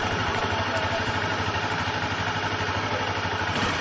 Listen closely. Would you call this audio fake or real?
fake